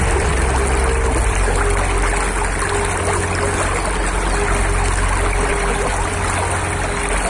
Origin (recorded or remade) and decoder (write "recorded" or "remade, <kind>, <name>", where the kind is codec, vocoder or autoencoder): recorded